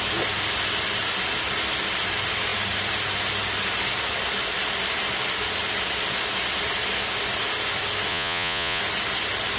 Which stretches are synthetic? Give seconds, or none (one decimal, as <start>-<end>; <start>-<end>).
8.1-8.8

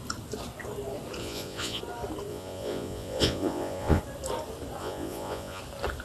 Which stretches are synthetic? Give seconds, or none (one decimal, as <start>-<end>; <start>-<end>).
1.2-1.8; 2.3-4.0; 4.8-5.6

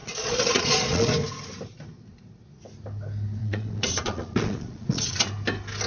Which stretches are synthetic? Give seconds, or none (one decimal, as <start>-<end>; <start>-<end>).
0.0-1.1; 3.4-5.3